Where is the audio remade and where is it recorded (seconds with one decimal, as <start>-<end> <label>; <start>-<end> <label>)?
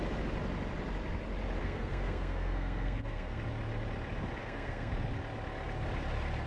0.0-1.6 recorded; 1.6-3.4 remade; 3.4-4.4 recorded; 4.4-4.9 remade; 4.9-6.5 recorded